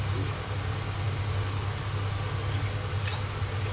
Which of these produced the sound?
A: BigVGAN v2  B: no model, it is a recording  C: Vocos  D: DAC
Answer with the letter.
B